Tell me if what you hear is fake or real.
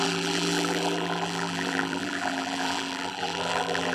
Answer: fake